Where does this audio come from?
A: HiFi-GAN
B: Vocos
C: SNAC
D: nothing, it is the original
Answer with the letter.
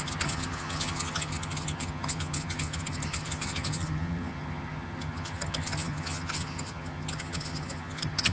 A